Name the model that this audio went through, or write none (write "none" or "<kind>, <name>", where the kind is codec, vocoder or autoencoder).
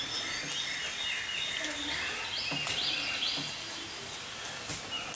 none